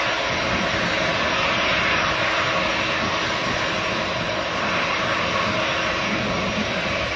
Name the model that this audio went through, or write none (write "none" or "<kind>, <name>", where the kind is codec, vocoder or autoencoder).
none